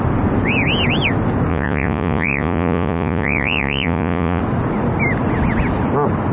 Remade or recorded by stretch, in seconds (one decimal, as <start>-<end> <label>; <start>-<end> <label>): 0.0-1.5 recorded; 1.5-4.4 remade; 4.4-6.3 recorded